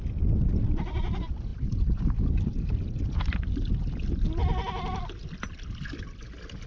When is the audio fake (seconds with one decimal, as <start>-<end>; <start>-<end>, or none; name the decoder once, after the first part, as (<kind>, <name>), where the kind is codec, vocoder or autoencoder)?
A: none